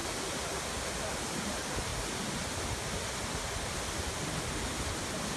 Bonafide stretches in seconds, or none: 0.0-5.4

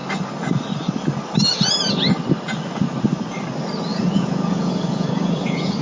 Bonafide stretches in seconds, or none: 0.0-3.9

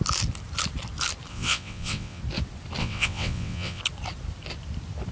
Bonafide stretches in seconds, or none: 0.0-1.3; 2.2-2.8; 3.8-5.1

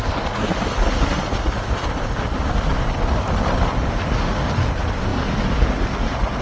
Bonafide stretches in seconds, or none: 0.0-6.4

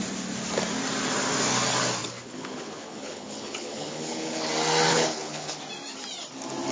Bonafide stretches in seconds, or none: 0.0-2.0; 4.5-4.9; 5.6-6.7